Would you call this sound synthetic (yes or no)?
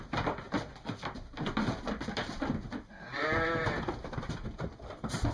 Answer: no